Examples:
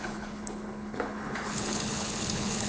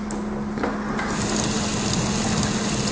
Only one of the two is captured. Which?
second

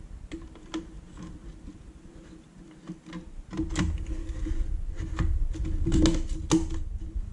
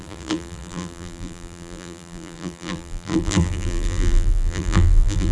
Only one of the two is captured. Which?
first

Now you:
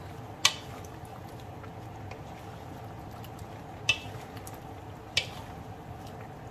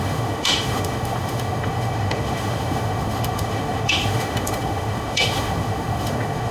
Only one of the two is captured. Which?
first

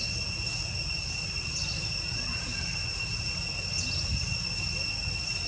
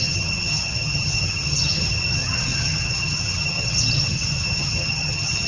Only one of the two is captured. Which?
first